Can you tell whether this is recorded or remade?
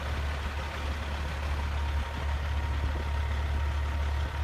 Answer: recorded